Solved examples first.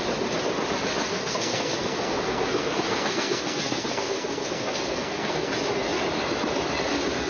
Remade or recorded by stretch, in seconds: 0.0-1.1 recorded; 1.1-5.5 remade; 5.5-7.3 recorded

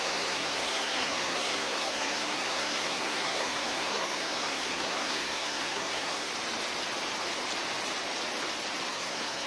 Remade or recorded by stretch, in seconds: 0.0-6.3 remade; 6.3-8.9 recorded; 8.9-9.5 remade

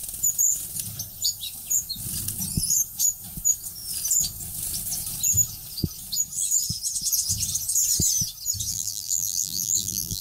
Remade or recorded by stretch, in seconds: 0.0-8.7 recorded; 8.7-10.2 remade

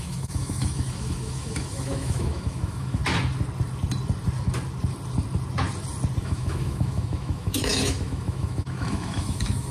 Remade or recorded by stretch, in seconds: 0.0-3.0 remade; 3.0-6.2 recorded; 6.2-9.7 remade

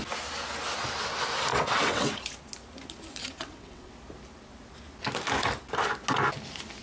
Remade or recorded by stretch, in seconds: 0.0-1.5 recorded; 1.5-2.2 remade; 2.2-3.2 recorded; 3.2-3.9 remade; 3.9-6.8 recorded